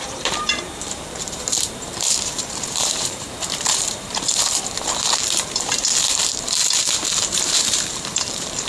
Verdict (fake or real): fake